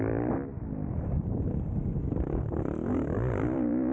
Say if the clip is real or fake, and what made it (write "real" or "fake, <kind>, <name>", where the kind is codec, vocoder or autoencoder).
real